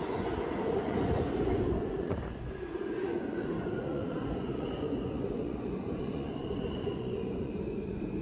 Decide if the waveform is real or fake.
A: fake